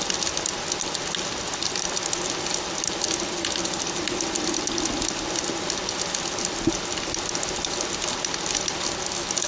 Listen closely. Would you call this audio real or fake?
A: real